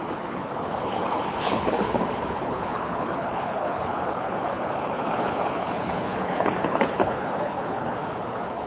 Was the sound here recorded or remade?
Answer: remade